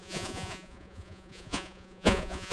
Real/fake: fake